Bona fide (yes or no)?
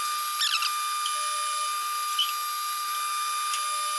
yes